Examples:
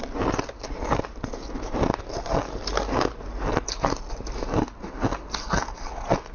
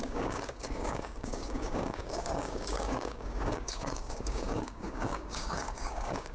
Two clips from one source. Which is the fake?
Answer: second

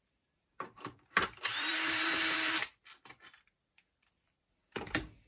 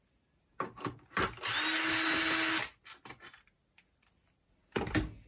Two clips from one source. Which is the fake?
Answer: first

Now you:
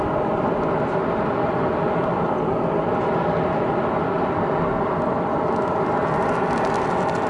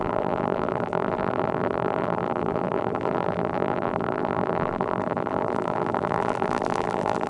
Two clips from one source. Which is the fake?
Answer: second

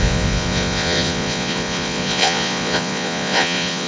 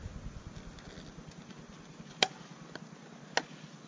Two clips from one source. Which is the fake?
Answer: first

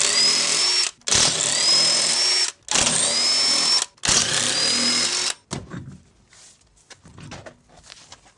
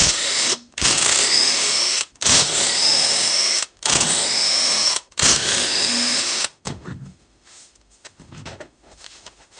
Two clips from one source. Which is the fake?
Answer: second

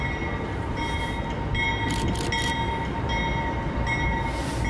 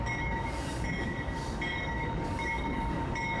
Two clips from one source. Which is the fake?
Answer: second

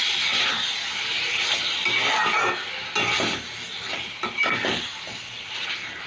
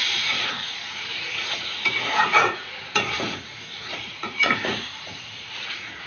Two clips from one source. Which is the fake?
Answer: second